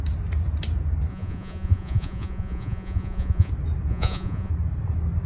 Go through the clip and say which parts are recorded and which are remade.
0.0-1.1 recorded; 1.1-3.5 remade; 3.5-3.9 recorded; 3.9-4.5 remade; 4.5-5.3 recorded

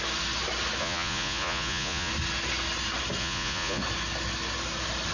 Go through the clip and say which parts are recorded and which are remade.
0.0-0.8 recorded; 0.8-2.1 remade; 2.1-3.2 recorded; 3.2-3.8 remade; 3.8-5.1 recorded

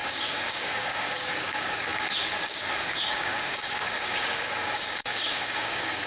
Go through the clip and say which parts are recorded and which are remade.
0.0-6.1 remade